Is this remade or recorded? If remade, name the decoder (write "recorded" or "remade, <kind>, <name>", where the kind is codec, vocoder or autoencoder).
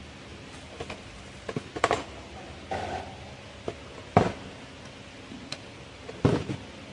recorded